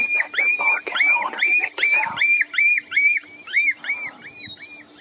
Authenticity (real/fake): real